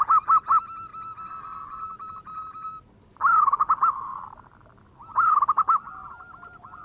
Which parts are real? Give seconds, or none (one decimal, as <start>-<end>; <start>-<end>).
0.0-6.8